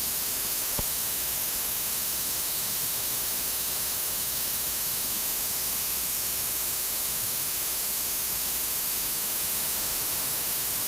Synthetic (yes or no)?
yes